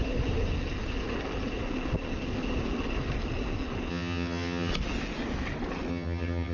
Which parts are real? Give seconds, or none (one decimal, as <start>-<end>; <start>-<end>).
0.0-3.9; 4.7-5.9